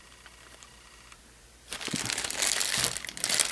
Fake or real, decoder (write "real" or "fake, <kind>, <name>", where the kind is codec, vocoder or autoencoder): real